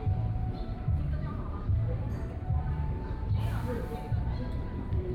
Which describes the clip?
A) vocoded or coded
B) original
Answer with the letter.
A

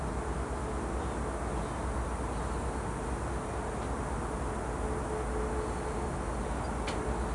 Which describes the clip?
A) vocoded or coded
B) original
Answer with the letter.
B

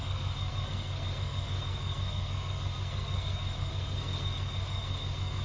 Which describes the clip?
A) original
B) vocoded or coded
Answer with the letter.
B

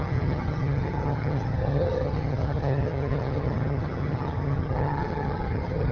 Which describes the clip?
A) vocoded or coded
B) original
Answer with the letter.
A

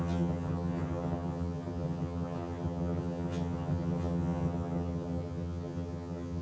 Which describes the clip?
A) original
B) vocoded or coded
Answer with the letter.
B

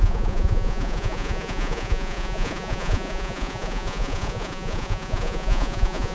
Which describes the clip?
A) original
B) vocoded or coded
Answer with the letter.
B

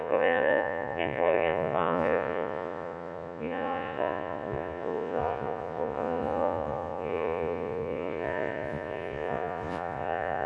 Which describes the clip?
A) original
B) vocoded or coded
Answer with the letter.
B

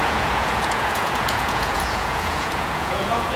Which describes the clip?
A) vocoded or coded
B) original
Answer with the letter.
A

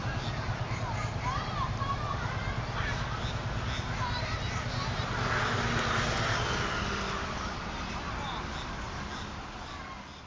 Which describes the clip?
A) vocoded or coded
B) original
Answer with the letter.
B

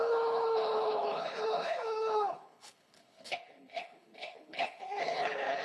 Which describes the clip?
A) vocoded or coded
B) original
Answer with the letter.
A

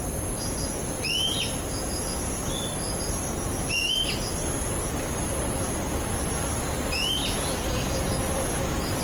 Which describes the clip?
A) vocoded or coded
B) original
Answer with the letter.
B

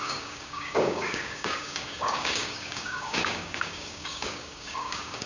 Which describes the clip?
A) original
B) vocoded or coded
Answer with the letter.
B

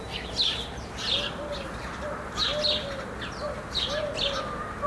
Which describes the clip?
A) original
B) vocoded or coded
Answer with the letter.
A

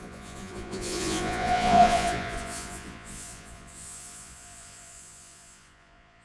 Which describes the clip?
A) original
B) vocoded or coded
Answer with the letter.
B